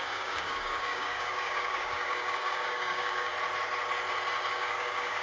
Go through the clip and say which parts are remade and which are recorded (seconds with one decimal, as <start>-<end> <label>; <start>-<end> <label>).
0.0-3.3 remade; 3.3-4.5 recorded; 4.5-5.2 remade